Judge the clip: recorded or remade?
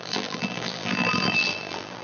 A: remade